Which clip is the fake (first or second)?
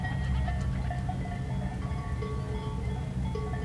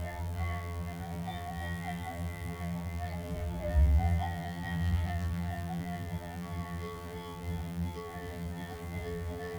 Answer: second